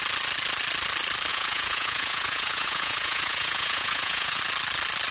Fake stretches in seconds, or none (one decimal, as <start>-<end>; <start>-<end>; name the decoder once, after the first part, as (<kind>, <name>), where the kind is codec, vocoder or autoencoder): 1.3-4.4 (vocoder, Vocos)